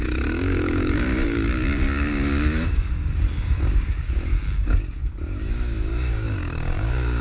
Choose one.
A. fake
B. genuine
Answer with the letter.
A